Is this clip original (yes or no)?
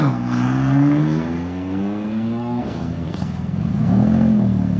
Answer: no